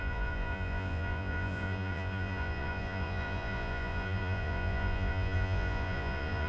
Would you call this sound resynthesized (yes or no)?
yes